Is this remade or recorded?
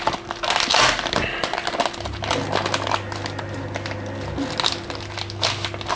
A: recorded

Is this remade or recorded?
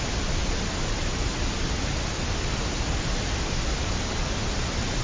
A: recorded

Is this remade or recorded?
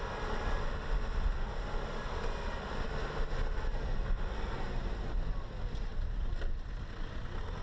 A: recorded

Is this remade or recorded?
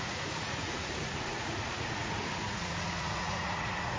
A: remade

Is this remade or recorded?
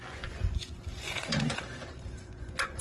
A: remade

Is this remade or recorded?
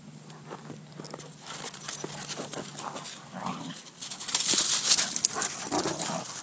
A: recorded